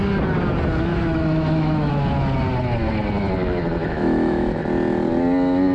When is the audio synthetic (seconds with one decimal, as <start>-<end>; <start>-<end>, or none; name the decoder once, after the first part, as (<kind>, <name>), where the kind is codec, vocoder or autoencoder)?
0.9-1.9 (autoencoder, DAC-VAE); 3.8-4.6